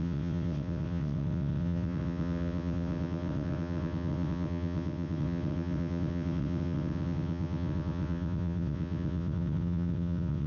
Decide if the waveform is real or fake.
fake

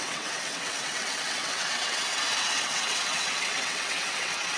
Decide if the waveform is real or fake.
fake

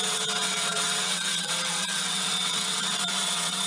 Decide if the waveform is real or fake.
fake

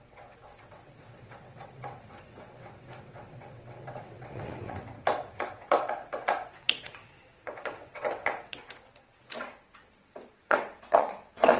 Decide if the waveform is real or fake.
fake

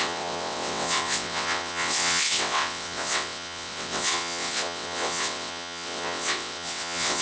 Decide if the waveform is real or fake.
fake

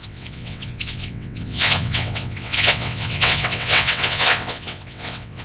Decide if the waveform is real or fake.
fake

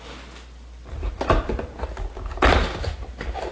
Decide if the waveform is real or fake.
real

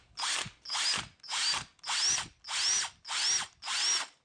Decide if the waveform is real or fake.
real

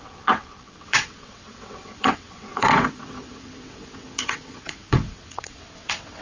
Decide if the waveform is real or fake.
fake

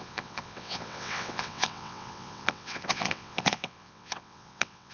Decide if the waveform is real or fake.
fake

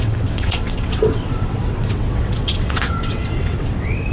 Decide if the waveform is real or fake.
fake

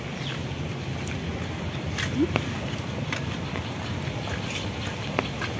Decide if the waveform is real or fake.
real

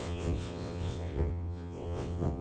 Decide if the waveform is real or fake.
fake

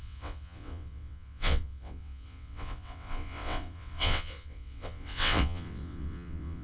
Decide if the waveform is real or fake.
fake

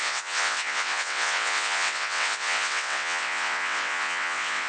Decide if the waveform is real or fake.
fake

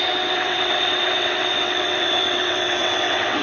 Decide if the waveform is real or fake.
fake